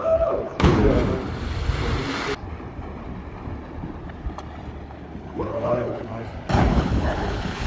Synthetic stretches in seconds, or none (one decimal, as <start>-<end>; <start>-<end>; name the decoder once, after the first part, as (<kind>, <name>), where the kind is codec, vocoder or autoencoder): 0.0-0.8 (codec, HILCodec); 5.2-6.1; 6.7-7.7